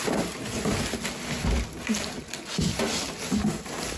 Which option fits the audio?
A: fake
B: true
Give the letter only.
B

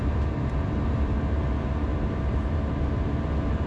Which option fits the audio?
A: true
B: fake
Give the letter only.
B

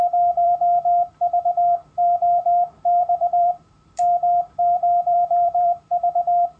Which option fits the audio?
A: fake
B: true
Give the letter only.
A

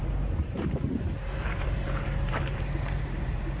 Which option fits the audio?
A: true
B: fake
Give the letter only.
B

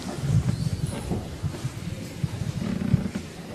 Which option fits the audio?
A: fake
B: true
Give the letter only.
A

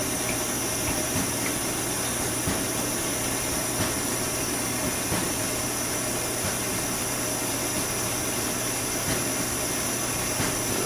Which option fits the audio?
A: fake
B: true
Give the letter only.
B